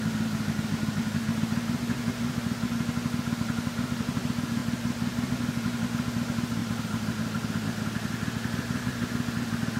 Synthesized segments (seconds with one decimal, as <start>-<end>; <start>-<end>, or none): 4.6-5.3; 6.6-7.6